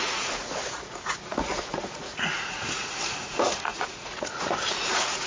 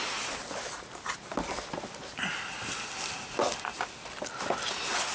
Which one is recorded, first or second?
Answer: second